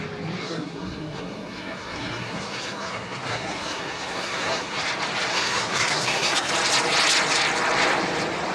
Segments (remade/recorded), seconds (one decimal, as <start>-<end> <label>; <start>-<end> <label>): 0.0-0.4 recorded; 0.4-4.8 remade; 4.8-5.3 recorded; 5.3-6.5 remade; 6.5-8.5 recorded